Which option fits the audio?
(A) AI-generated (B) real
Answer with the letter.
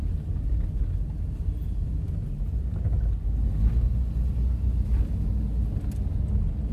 B